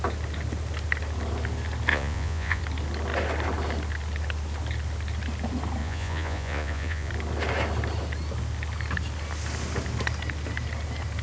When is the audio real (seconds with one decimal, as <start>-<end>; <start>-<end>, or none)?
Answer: 0.0-1.9; 2.6-5.8; 7.1-11.2